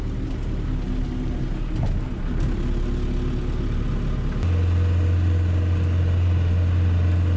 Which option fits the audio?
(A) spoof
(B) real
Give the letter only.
B